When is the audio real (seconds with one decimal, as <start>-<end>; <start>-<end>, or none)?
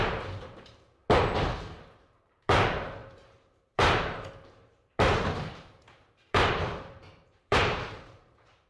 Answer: 1.0-1.9